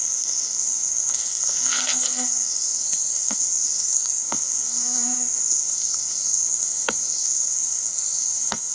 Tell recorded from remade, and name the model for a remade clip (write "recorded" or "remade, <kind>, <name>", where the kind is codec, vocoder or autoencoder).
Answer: remade, codec, SNAC